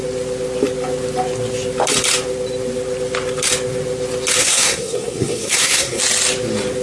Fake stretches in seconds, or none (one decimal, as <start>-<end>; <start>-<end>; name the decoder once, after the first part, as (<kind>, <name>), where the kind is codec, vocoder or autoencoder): 4.4-6.0 (codec, SNAC)